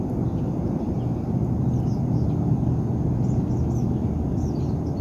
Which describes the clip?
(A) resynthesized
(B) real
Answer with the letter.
B